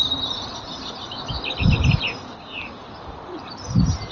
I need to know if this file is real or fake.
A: fake